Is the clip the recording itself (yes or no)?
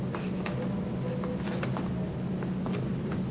yes